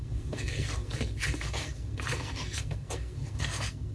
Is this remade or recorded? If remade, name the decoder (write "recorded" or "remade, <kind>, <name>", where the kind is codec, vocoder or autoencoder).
remade, codec, SNAC